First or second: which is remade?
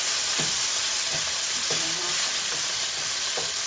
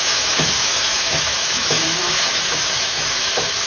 second